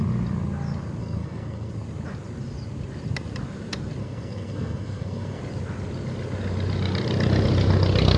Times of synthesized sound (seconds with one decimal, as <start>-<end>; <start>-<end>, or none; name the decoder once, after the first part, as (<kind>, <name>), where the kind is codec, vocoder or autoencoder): 1.0-1.7 (codec, SNAC); 4.0-5.4